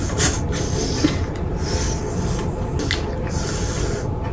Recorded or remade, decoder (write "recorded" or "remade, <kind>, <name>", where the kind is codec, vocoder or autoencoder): recorded